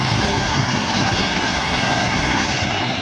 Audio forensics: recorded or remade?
remade